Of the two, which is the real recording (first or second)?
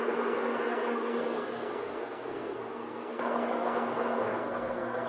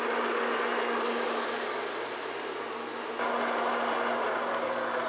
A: second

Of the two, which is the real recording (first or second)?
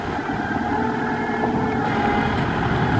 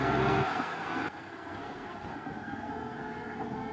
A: first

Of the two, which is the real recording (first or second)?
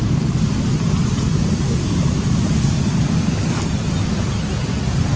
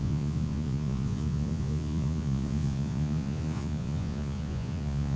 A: first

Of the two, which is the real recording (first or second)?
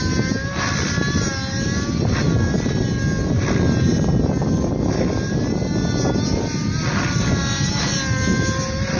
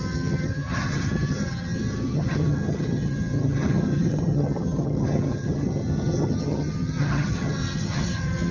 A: first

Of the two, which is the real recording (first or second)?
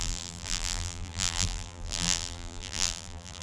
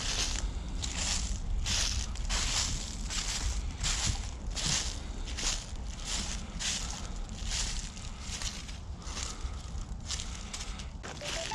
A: second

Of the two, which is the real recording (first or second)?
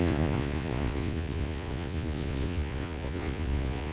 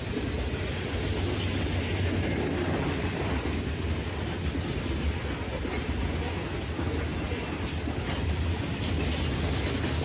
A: second